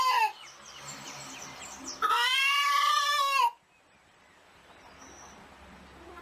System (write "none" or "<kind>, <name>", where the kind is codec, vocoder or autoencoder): none